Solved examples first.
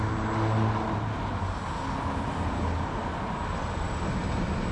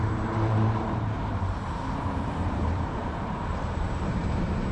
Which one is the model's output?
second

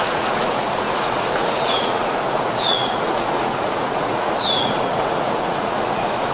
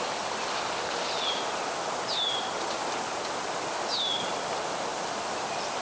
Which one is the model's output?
first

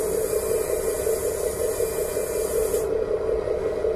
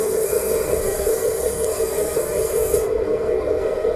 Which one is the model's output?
second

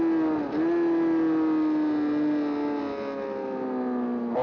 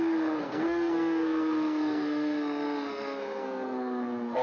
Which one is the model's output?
second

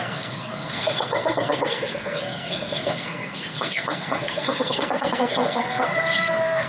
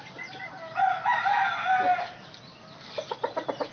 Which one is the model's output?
first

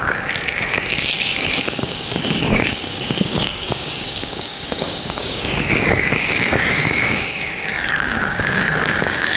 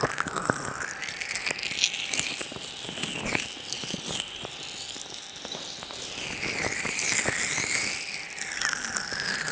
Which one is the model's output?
first